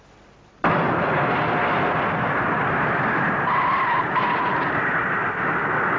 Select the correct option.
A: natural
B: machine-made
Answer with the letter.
A